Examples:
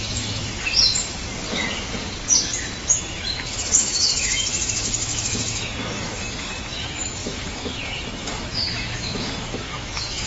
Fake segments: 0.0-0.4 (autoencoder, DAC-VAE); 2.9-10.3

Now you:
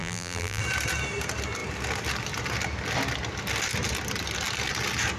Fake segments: 0.0-0.6 (vocoder, BigVGAN v2)

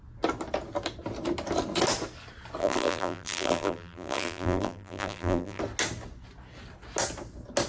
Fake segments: 2.6-5.6 (vocoder, BigVGAN v2)

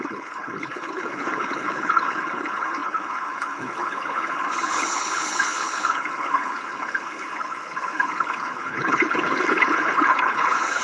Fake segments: 0.0-10.8 (codec, HILCodec)